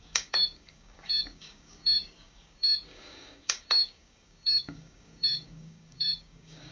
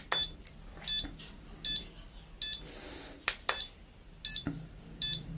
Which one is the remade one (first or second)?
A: first